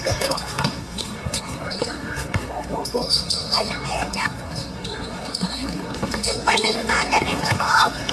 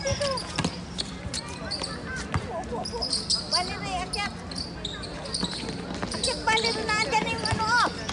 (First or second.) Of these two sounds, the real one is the second